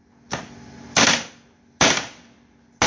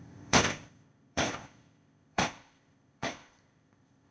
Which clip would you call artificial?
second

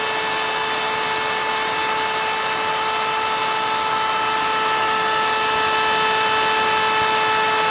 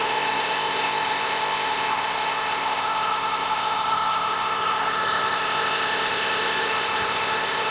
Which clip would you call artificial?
second